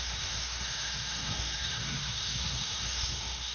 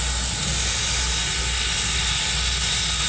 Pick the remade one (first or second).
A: first